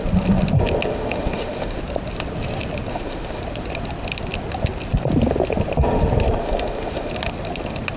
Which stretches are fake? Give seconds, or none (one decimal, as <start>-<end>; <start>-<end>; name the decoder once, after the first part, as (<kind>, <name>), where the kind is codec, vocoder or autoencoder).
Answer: 0.9-1.8 (autoencoder, DAC-VAE); 2.9-3.4; 6.4-7.1

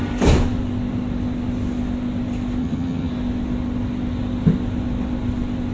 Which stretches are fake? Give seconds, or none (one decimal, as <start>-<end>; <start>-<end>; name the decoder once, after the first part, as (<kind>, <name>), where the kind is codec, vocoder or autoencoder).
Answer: 2.6-3.1 (vocoder, HiFi-GAN)

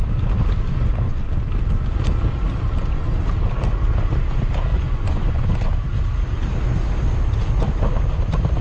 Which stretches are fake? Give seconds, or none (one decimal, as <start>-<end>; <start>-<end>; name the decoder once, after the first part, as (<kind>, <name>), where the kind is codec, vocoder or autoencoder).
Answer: 4.7-5.5 (vocoder, Vocos)

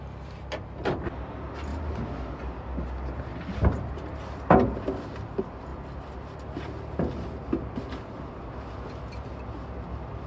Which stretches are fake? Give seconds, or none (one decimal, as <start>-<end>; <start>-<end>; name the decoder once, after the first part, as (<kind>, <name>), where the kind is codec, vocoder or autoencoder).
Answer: none